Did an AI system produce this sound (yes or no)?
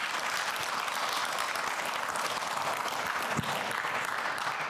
no